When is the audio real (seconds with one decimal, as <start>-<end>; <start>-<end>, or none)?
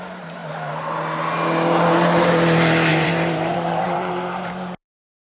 0.0-2.9; 4.1-5.3